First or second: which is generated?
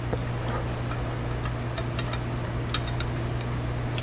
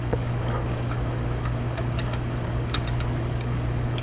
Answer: second